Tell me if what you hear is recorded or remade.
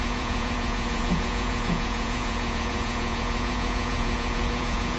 remade